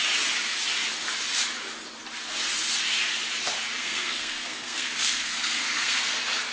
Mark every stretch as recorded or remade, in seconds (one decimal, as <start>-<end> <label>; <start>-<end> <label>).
0.0-3.8 recorded; 3.8-6.0 remade; 6.0-6.5 recorded